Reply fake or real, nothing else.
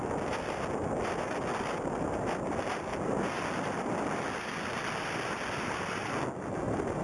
real